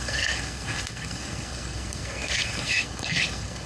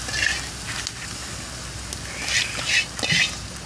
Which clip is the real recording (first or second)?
second